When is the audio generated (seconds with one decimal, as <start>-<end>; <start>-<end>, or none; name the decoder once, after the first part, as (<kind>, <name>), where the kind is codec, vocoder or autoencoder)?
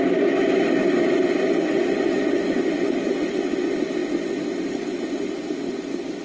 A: none